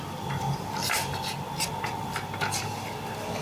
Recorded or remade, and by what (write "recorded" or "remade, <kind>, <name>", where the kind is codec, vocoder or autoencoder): recorded